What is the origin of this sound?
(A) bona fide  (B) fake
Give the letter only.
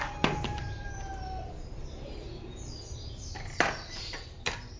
B